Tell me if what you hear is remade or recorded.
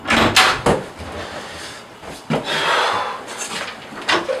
recorded